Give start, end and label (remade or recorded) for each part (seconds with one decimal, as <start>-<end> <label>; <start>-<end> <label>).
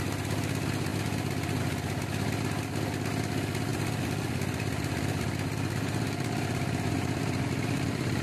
0.0-0.9 recorded; 0.9-1.6 remade; 1.6-3.7 recorded; 3.7-8.2 remade